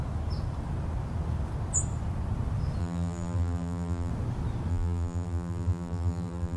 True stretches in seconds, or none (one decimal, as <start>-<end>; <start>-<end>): 0.0-2.8; 4.1-4.7